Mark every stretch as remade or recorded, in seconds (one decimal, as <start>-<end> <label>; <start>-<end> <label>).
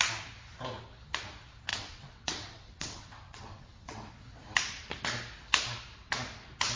0.0-1.7 recorded; 1.7-4.3 remade; 4.3-6.8 recorded